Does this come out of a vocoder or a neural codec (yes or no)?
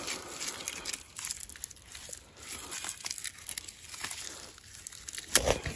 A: no